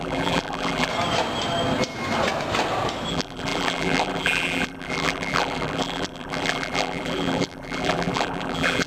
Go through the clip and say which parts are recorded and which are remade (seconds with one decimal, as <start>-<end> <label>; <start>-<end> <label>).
0.0-0.9 remade; 0.9-3.1 recorded; 3.1-8.9 remade